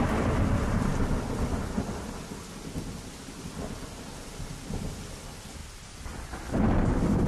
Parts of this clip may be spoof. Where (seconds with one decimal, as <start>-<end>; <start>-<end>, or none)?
5.6-7.3